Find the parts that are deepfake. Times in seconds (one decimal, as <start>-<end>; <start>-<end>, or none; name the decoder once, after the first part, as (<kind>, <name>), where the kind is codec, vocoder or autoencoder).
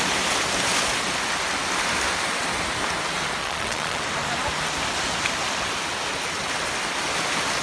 3.4-4.0 (vocoder, Vocos)